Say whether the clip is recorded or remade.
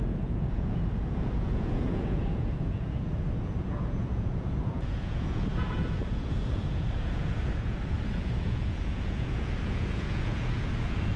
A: remade